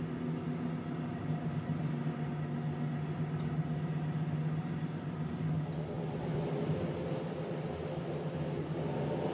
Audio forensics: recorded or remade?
recorded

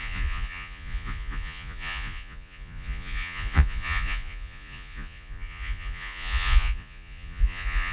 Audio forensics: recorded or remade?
remade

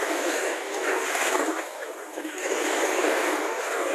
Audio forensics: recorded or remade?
remade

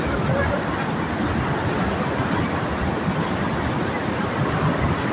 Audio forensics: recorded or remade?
remade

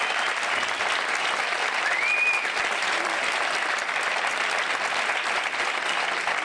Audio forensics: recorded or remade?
recorded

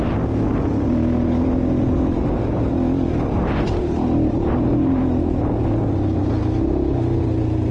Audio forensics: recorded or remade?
recorded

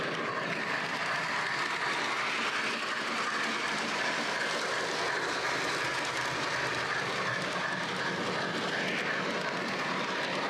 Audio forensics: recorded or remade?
recorded